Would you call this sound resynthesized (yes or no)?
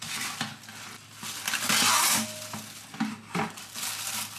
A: no